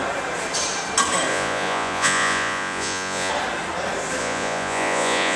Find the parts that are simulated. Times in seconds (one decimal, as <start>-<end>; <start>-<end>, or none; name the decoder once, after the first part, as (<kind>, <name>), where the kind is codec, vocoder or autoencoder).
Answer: 1.3-3.3 (vocoder, Vocos); 4.2-5.4